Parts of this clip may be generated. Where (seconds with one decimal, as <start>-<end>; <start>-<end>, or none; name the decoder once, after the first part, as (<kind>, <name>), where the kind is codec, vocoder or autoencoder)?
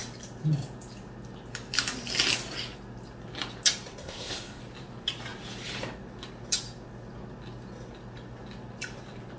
4.0-4.6 (codec, ZipCodec)